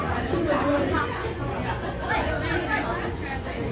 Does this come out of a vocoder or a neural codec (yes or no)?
yes